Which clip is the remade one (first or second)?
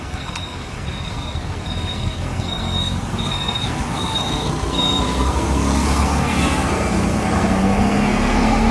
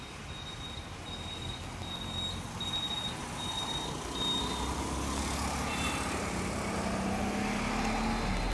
first